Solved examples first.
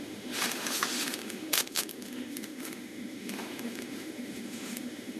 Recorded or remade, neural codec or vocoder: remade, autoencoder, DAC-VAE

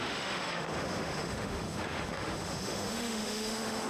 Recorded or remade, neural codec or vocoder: remade, autoencoder, DAC-VAE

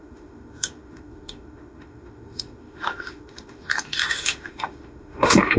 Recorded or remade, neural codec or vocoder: remade, autoencoder, DAC-VAE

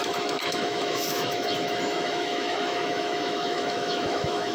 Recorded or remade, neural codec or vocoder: remade, autoencoder, DAC-VAE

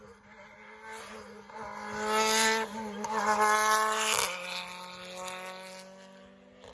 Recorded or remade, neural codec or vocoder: recorded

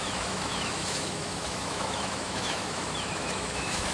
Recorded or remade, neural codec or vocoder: remade, autoencoder, DAC-VAE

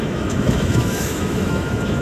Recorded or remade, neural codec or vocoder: remade, autoencoder, DAC-VAE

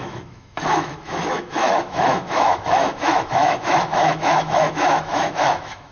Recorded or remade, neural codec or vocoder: remade, autoencoder, DAC-VAE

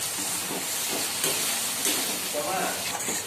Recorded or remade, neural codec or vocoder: recorded